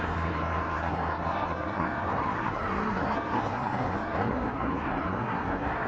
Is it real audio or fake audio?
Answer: fake